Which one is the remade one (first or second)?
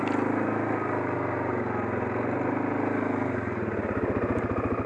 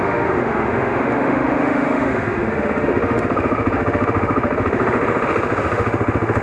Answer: second